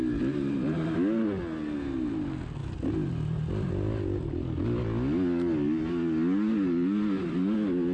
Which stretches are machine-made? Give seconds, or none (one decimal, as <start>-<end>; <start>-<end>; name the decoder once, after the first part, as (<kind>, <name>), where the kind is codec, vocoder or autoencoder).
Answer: none